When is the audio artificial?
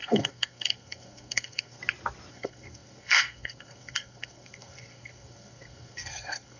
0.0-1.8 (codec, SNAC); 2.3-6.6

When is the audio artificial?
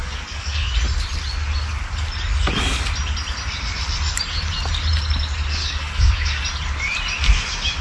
0.0-0.7 (codec, DAC); 5.6-6.4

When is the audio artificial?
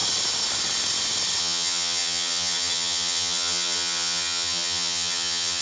1.4-5.6 (vocoder, HiFi-GAN)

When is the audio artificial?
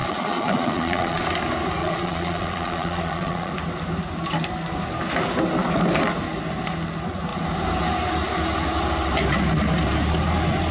0.0-1.2 (vocoder, Vocos); 1.8-3.5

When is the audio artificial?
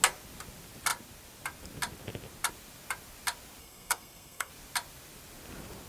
3.6-4.5 (codec, SNAC)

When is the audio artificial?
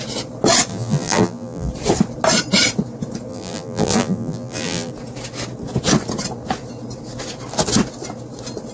0.7-1.7 (vocoder, BigVGAN v2); 3.3-4.9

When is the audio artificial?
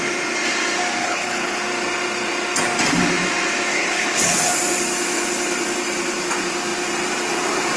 1.0-1.6 (codec, HILCodec); 3.7-4.5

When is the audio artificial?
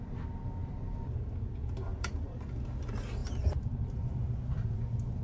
1.9-2.4 (vocoder, BigVGAN v2)